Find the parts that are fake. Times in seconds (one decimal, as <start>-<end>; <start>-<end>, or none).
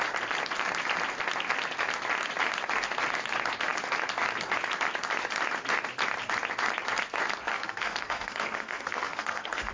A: 7.5-9.7